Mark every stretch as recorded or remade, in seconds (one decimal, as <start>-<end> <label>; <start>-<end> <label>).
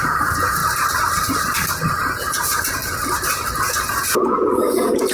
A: 0.0-0.6 remade; 0.6-2.2 recorded; 2.2-2.8 remade; 2.8-3.6 recorded; 3.6-5.1 remade